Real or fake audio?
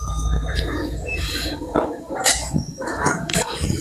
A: fake